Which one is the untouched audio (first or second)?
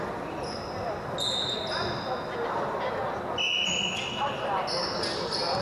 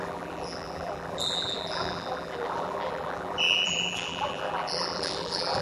first